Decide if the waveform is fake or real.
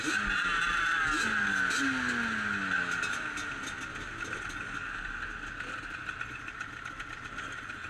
real